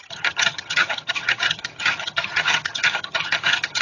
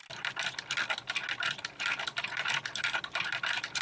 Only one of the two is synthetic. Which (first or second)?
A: first